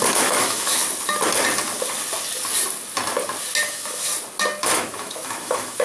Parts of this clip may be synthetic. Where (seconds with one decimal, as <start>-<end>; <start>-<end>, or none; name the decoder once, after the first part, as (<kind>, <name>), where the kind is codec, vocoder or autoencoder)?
0.0-0.8 (autoencoder, DAC-VAE); 3.6-4.1; 4.6-5.8